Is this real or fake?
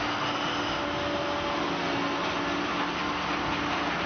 real